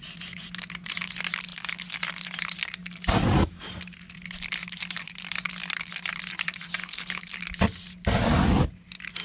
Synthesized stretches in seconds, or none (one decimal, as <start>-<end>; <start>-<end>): 6.8-7.4